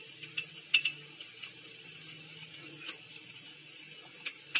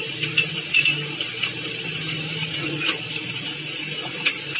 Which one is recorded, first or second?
first